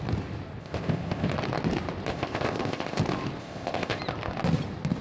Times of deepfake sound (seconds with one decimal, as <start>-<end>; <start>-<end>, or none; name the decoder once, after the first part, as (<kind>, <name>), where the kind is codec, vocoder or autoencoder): 0.6-1.3 (codec, ZipCodec); 2.1-3.0; 3.4-4.0